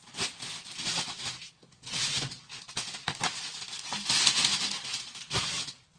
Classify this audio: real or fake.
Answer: real